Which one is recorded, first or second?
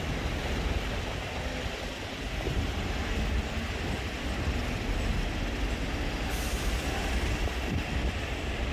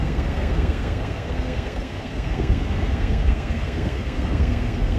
first